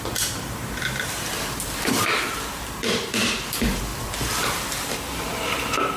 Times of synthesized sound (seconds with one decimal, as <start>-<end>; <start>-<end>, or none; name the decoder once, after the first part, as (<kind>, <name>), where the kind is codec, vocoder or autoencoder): 0.0-6.0 (vocoder, BigVGAN v2)